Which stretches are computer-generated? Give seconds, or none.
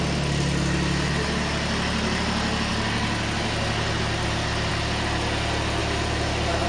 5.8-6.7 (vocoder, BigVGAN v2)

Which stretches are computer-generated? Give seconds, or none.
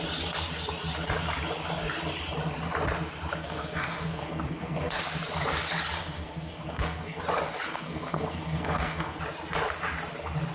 3.4-5.0 (codec, SNAC); 6.0-7.2; 7.7-9.2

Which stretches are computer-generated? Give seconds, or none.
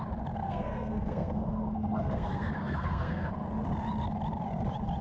0.4-3.3 (codec, SNAC)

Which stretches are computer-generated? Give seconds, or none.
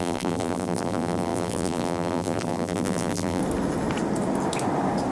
0.0-3.4 (vocoder, BigVGAN v2)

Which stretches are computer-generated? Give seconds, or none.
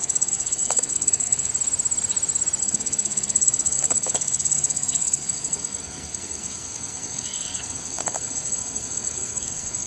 0.0-1.5 (codec, SNAC); 2.6-9.9